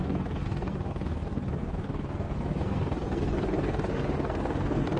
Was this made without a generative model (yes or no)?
no